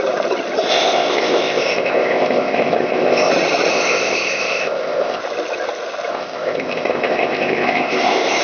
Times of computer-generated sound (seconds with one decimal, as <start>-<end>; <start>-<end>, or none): 0.7-3.3; 3.7-5.2; 6.1-8.4